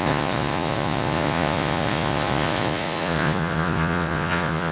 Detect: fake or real fake